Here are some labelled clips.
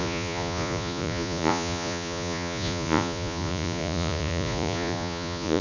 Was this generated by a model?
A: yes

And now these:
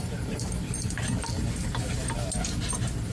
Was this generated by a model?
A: no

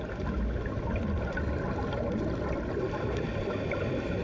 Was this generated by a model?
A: no